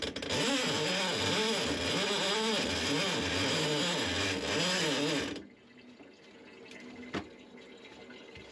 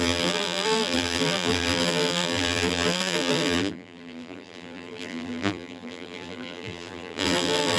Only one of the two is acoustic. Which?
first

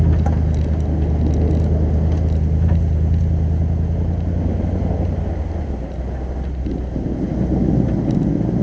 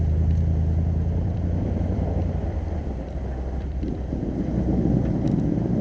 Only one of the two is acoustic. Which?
first